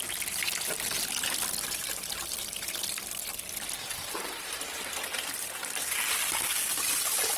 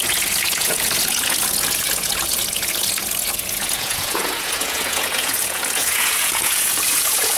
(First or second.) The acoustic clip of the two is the first